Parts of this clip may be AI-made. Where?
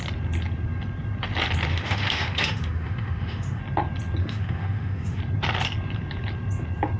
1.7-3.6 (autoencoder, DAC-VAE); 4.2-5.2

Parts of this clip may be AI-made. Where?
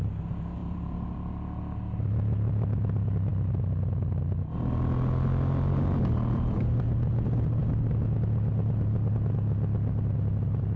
0.6-1.3 (vocoder, BigVGAN v2)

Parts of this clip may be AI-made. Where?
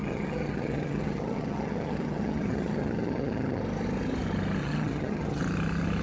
0.0-3.6 (vocoder, HiFi-GAN); 4.6-5.4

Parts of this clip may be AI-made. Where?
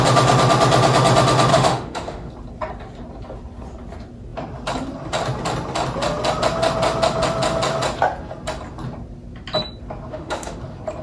1.5-2.3 (autoencoder, DAC-VAE); 10.1-10.6